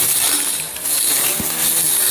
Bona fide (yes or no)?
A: no